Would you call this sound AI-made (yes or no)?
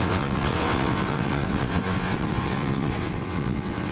yes